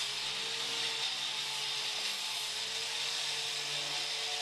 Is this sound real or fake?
real